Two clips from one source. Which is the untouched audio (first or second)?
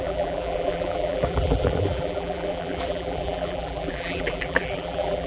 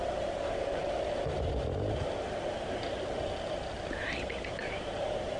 second